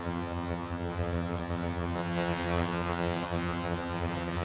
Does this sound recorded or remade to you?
remade